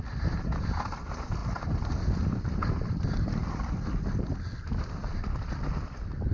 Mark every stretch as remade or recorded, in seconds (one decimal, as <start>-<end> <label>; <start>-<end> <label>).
0.0-6.3 recorded